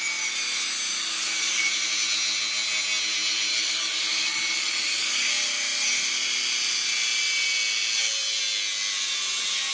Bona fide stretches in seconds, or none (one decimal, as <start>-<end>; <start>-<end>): 0.0-0.9; 1.7-3.5; 5.3-9.7